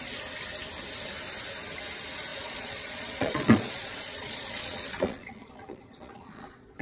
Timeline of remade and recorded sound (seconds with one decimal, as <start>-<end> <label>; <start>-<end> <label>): 0.0-2.3 recorded; 2.3-6.8 remade